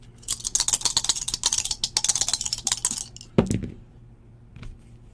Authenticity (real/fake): real